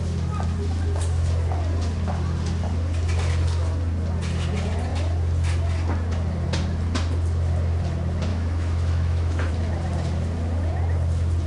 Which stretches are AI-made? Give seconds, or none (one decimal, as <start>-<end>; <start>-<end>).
8.3-9.5

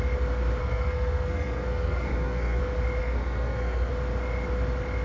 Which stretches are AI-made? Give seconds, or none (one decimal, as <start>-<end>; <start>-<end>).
0.6-2.6; 3.0-3.9

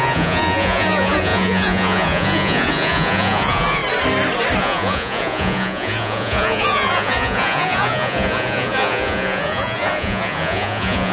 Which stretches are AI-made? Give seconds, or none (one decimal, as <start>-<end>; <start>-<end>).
0.0-3.8; 4.6-11.1

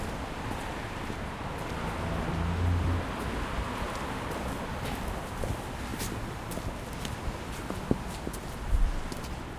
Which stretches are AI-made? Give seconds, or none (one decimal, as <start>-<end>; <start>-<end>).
none